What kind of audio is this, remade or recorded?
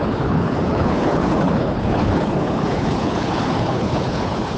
remade